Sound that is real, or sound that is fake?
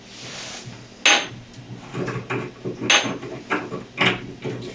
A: real